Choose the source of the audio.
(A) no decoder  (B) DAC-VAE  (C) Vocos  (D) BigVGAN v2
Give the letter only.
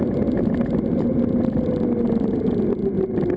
A